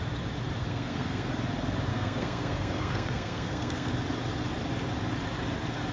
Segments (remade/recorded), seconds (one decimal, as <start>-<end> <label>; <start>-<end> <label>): 0.0-0.6 recorded; 0.6-1.3 remade; 1.3-1.9 recorded; 1.9-3.9 remade; 3.9-5.9 recorded